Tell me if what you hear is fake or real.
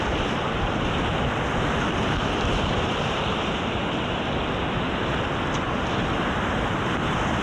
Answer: real